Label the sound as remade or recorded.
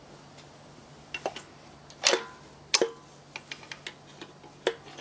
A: recorded